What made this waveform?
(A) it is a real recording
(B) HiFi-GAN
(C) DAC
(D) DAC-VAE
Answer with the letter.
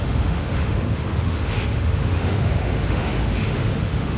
D